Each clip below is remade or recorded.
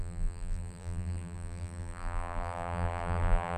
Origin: remade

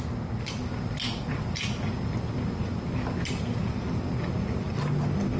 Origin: recorded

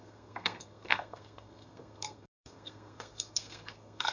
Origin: remade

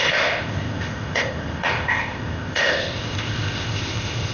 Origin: remade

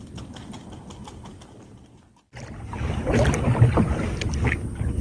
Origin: recorded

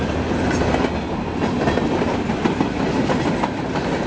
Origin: recorded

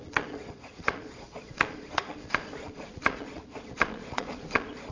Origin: remade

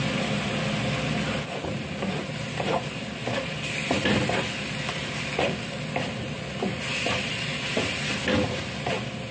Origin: recorded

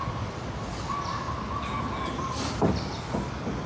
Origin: recorded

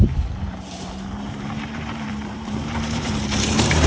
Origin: remade